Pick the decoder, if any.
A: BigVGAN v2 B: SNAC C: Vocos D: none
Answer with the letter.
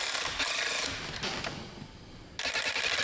D